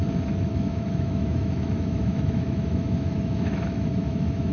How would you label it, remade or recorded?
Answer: remade